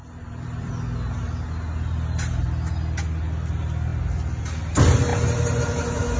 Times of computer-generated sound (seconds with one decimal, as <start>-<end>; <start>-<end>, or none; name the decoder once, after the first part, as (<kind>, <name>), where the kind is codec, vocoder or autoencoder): 0.0-0.7 (vocoder, BigVGAN v2)